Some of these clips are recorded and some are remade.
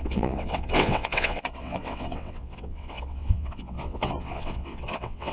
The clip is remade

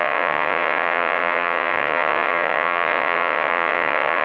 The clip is remade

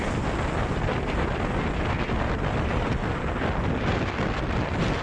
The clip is recorded